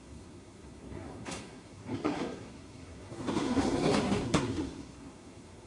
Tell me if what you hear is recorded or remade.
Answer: remade